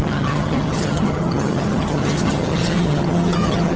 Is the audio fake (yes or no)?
yes